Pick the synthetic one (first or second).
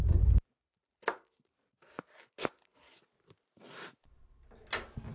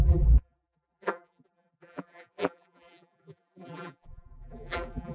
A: second